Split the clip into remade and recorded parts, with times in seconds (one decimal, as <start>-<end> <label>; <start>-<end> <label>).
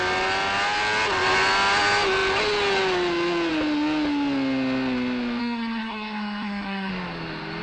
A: 0.0-5.4 recorded; 5.4-6.9 remade; 6.9-7.6 recorded